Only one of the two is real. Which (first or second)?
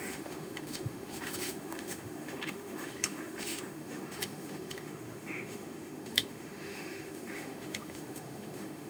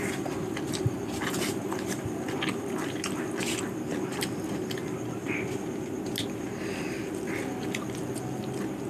second